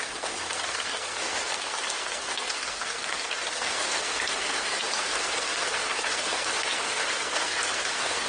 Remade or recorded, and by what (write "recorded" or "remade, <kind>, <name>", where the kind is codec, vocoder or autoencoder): remade, codec, SNAC